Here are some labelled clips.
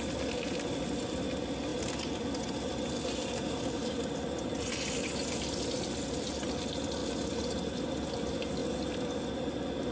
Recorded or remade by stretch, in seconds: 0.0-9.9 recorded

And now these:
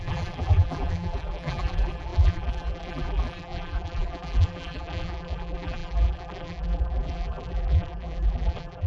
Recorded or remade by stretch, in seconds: 0.0-8.9 remade

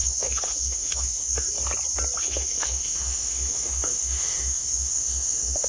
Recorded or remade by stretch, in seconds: 0.0-1.5 remade; 1.5-2.2 recorded; 2.2-5.7 remade